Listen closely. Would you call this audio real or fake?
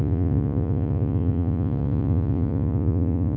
fake